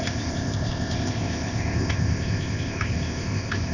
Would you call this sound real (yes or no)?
no